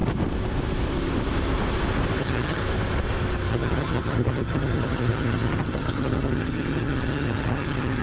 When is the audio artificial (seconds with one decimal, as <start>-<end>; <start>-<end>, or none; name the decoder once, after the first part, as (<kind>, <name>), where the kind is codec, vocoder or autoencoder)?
2.2-2.6 (vocoder, HiFi-GAN); 3.5-8.0